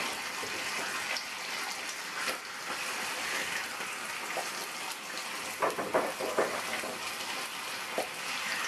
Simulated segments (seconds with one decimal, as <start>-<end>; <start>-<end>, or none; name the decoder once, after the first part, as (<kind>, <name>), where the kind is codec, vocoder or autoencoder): none